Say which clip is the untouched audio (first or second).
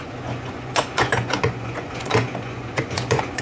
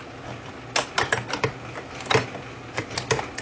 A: second